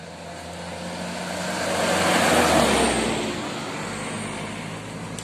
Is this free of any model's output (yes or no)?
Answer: yes